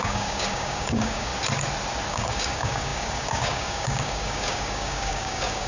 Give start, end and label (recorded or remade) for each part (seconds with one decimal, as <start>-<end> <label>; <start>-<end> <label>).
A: 0.0-1.3 remade; 1.3-2.1 recorded; 2.1-5.7 remade